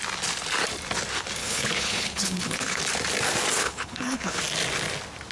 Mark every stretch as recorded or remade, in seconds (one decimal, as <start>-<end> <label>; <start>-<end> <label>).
0.0-1.4 recorded; 1.4-2.8 remade; 2.8-3.6 recorded; 3.6-4.4 remade; 4.4-5.3 recorded